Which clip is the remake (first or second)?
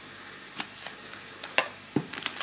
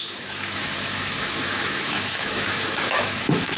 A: second